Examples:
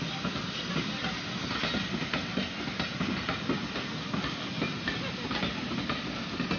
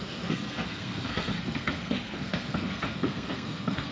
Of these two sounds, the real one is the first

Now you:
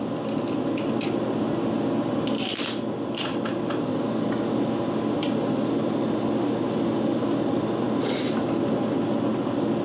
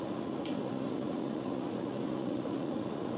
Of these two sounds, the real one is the first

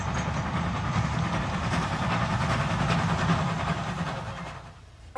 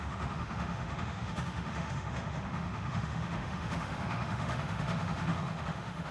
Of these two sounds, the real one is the first